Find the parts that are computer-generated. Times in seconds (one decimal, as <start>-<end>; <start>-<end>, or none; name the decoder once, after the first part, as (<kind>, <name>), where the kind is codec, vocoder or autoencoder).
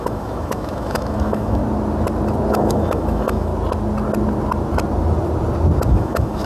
0.0-1.6 (autoencoder, DAC-VAE); 2.5-3.5; 5.9-6.5